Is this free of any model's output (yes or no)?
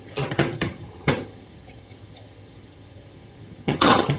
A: no